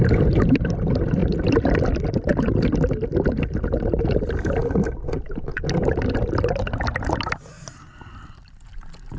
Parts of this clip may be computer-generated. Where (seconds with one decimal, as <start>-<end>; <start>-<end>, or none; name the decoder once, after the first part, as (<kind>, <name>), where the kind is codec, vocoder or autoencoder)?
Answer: none